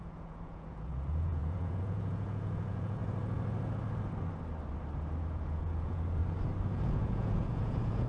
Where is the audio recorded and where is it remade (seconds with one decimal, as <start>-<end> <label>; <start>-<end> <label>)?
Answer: 0.0-3.0 remade; 3.0-5.2 recorded; 5.2-6.2 remade; 6.2-6.7 recorded; 6.7-8.1 remade